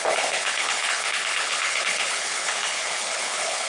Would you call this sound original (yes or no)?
no